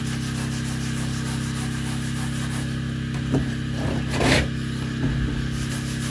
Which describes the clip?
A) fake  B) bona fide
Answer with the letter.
B